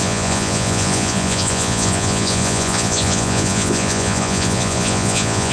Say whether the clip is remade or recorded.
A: remade